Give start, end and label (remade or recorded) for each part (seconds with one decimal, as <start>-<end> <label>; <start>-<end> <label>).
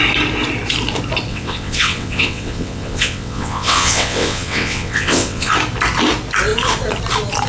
0.0-1.3 recorded; 1.3-5.5 remade; 5.5-7.5 recorded